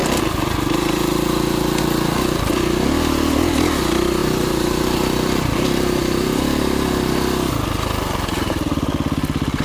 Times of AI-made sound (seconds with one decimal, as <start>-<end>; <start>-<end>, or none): 4.2-6.4